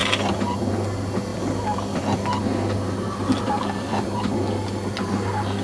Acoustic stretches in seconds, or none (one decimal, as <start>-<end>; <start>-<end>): 0.7-1.3; 2.0-3.2; 4.4-5.6